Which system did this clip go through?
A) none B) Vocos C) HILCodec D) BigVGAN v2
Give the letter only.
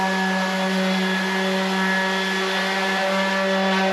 A